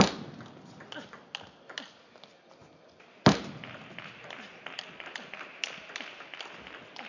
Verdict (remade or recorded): recorded